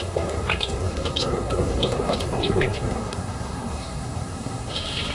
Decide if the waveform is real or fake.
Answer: fake